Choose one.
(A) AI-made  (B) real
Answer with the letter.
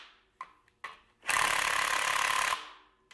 B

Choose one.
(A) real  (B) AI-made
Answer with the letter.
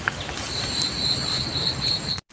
A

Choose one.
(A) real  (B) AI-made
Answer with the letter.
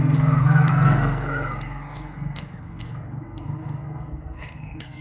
B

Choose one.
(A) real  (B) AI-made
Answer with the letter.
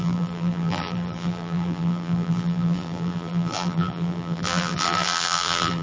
B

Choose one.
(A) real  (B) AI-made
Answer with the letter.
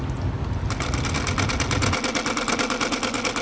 A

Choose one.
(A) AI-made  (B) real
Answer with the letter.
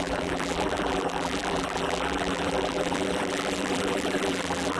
A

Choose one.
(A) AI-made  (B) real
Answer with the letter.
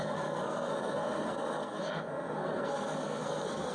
A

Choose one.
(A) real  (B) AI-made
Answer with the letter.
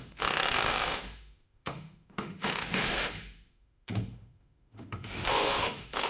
B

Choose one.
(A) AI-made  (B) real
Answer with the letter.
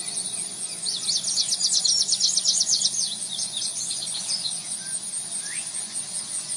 A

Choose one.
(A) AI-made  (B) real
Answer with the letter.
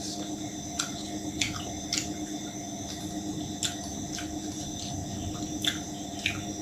B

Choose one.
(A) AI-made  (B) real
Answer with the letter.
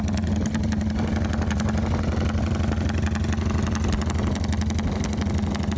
B